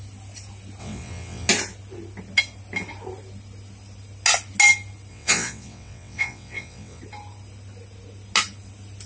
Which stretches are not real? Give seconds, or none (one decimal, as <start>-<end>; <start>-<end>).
0.8-1.5; 5.1-7.0